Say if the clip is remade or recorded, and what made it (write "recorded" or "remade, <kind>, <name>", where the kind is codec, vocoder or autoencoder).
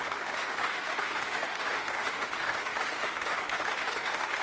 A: remade, autoencoder, DAC-VAE